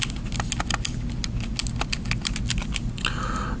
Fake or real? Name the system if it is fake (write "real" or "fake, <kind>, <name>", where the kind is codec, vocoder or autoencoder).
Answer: real